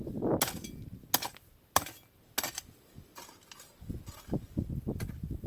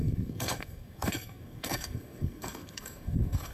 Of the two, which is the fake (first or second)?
second